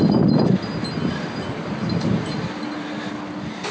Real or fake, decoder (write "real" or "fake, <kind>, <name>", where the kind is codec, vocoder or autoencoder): real